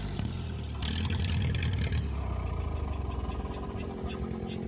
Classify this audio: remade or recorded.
recorded